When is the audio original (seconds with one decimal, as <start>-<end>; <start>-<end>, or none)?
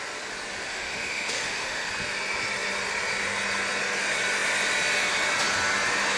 0.0-0.7; 1.9-6.2